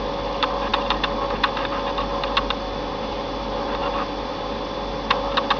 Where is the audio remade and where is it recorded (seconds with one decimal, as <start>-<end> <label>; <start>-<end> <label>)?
0.0-0.7 remade; 0.7-3.1 recorded; 3.1-3.8 remade; 3.8-5.6 recorded